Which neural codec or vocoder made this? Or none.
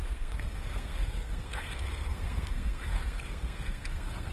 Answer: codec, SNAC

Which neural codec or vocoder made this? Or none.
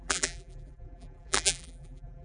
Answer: vocoder, BigVGAN v2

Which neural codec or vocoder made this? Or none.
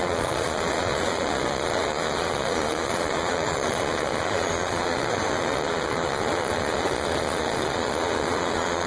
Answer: vocoder, Vocos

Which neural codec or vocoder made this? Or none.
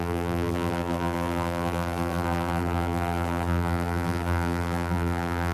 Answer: vocoder, BigVGAN v2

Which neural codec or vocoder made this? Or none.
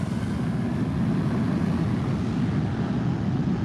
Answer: none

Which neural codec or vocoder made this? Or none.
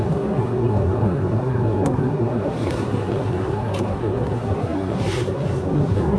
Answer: codec, SNAC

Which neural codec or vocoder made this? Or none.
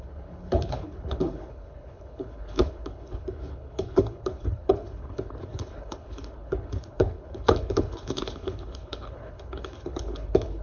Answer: codec, HILCodec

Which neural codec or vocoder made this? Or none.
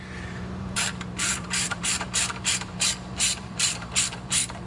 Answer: vocoder, BigVGAN v2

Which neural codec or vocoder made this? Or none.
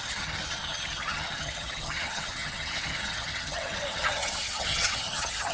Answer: vocoder, HiFi-GAN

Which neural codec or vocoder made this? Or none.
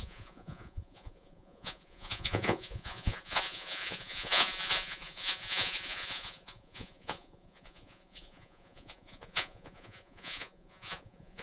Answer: vocoder, Vocos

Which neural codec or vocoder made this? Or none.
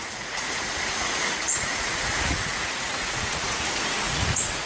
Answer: vocoder, Vocos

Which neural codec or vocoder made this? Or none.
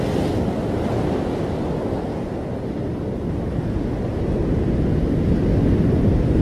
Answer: none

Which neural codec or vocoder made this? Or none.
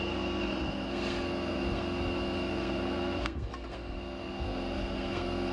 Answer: codec, SNAC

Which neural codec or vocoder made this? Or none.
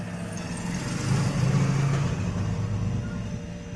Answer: none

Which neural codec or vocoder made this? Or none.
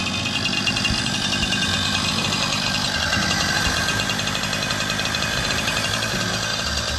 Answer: none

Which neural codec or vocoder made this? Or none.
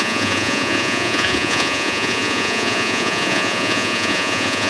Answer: vocoder, Vocos